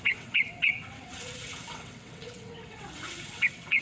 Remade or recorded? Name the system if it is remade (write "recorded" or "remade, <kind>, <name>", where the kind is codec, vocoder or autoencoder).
remade, vocoder, WaveNeXt